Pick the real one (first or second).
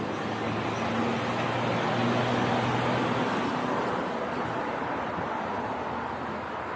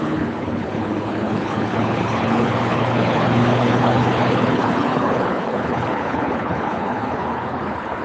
first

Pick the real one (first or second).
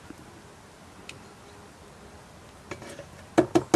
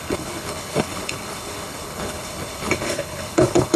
first